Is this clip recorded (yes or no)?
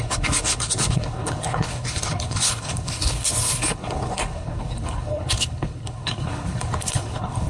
no